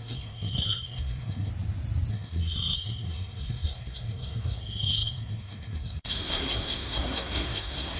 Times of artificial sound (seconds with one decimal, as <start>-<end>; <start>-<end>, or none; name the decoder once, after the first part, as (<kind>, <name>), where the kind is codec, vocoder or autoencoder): 0.0-1.5 (codec, SNAC); 2.1-8.0